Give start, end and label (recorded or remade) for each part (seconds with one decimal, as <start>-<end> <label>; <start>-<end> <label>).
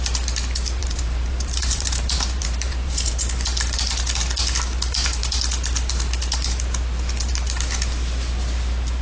0.0-0.8 recorded; 0.8-3.1 remade; 3.1-9.0 recorded